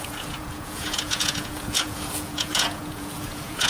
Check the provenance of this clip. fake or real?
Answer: fake